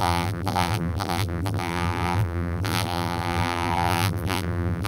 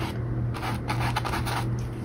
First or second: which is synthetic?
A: first